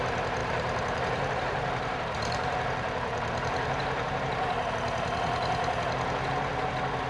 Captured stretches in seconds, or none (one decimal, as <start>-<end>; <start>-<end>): 0.0-0.4; 4.7-7.1